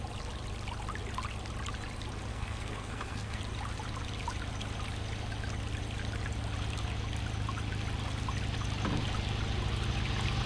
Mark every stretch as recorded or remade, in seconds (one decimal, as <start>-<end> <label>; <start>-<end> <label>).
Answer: 0.0-2.3 recorded; 2.3-3.4 remade; 3.4-10.5 recorded